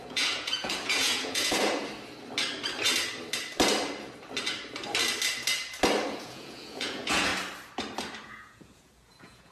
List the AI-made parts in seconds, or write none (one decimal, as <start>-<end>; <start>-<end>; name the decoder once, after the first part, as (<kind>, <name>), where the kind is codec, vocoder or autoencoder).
0.0-1.8 (vocoder, Vocos); 6.1-7.3; 8.2-9.5